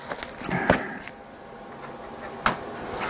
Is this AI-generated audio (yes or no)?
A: no